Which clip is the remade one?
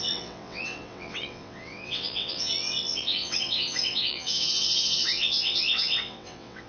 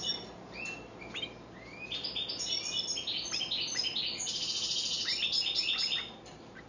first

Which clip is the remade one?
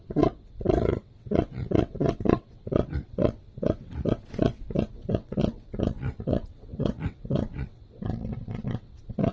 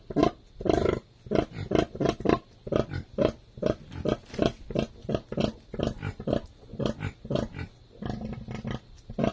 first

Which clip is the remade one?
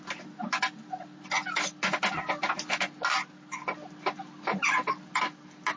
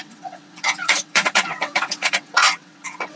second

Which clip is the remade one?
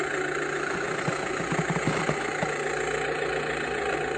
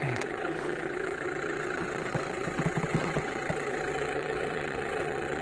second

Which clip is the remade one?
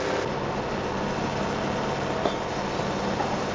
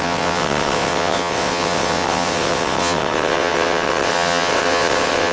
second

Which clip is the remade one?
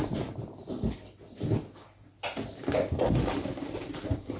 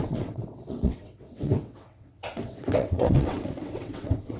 second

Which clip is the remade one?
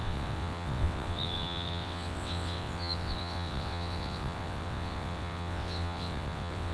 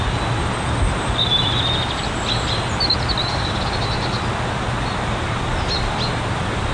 first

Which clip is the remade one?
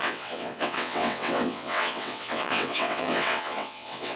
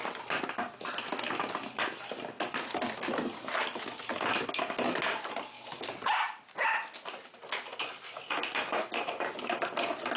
first